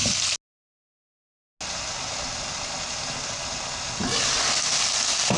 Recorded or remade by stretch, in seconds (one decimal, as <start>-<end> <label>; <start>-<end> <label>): 0.0-5.4 recorded